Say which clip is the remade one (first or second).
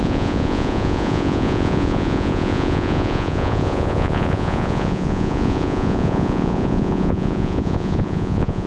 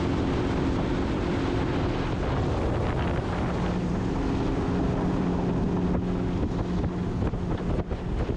first